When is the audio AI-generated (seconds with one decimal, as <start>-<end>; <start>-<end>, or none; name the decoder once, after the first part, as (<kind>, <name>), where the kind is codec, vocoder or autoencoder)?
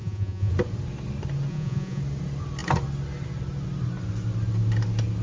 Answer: 0.0-0.5 (vocoder, Vocos); 1.5-2.0